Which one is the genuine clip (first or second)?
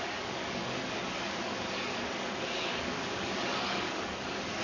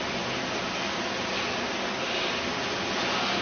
second